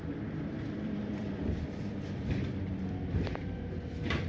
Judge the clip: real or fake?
fake